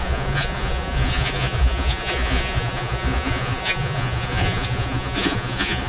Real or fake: fake